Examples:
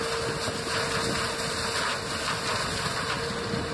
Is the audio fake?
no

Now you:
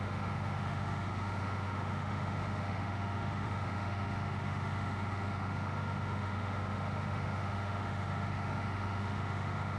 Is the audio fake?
yes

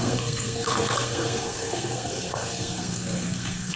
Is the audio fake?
yes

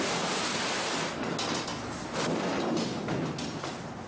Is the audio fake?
no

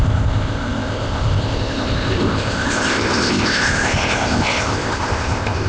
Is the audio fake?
yes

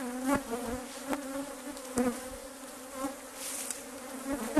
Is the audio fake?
no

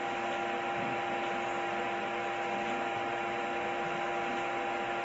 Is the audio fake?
no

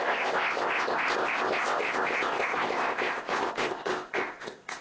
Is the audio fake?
yes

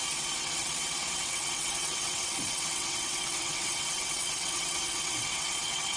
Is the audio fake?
yes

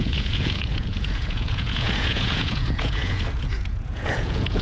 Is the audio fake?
yes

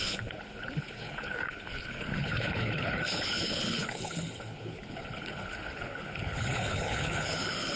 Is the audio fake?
yes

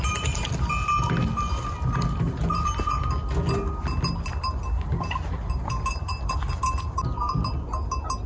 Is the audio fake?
no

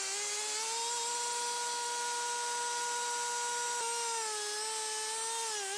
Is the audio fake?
no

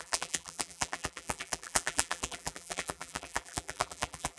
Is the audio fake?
yes